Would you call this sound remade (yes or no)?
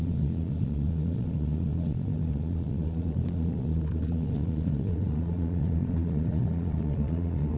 yes